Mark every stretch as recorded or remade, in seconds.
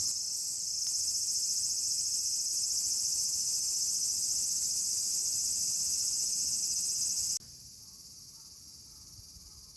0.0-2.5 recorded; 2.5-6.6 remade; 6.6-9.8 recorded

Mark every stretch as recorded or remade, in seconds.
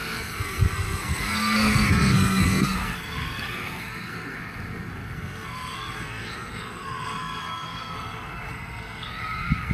0.0-9.7 remade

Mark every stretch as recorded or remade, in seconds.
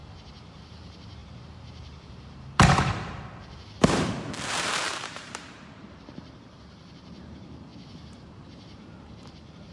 0.0-0.6 recorded; 0.6-7.7 remade; 7.7-9.2 recorded; 9.2-9.7 remade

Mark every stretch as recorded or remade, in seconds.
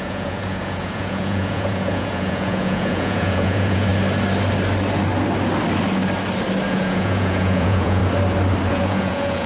0.0-3.9 remade; 3.9-6.7 recorded; 6.7-8.0 remade; 8.0-8.7 recorded; 8.7-9.5 remade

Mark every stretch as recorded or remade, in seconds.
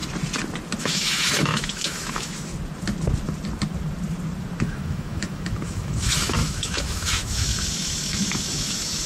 0.0-0.8 recorded; 0.8-2.5 remade; 2.5-4.6 recorded; 4.6-9.1 remade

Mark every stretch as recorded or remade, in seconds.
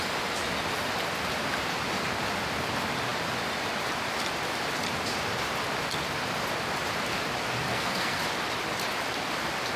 0.0-7.7 recorded; 7.7-8.2 remade; 8.2-9.8 recorded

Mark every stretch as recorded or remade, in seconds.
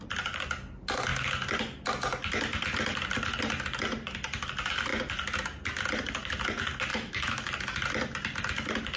0.0-6.9 recorded; 6.9-7.5 remade; 7.5-9.0 recorded